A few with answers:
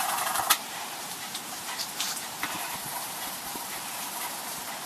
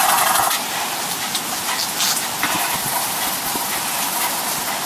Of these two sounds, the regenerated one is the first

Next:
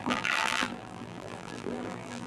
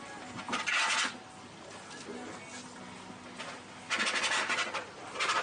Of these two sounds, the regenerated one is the first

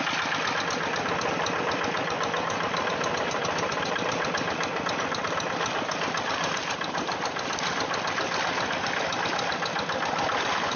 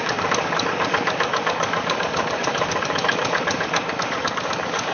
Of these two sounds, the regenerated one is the second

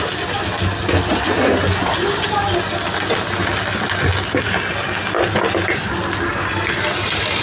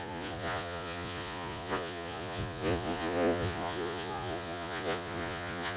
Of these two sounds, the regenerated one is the second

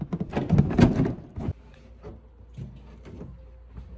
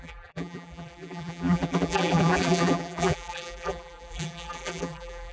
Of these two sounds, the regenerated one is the second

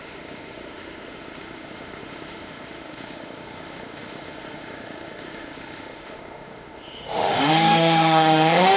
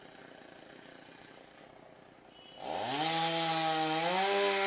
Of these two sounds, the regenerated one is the first